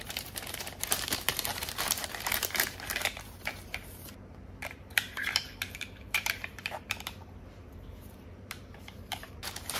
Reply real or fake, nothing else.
fake